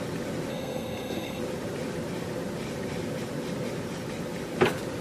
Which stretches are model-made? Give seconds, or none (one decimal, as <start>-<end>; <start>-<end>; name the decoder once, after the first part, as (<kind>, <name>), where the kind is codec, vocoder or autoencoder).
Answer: 0.5-1.4 (codec, SNAC)